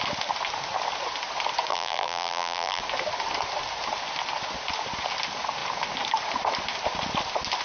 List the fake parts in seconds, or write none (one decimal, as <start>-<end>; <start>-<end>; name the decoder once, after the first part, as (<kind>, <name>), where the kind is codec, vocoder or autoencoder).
1.7-2.8 (vocoder, BigVGAN v2)